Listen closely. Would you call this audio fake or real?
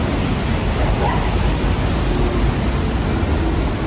real